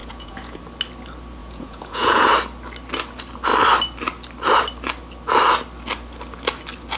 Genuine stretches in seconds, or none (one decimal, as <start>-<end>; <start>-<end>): 0.6-1.4; 2.3-7.0

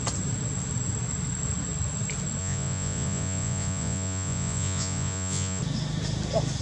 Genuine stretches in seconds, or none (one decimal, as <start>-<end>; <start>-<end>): 0.0-2.4; 5.6-6.6

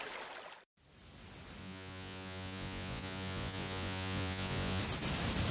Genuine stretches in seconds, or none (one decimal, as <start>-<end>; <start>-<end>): 0.0-1.6; 4.8-5.5